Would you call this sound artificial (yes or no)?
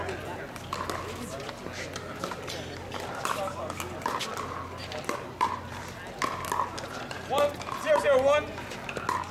no